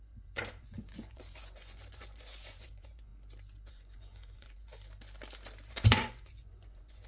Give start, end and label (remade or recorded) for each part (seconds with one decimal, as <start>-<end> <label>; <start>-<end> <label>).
0.0-3.1 remade; 3.1-3.7 recorded; 3.7-4.7 remade; 4.7-5.7 recorded; 5.7-7.1 remade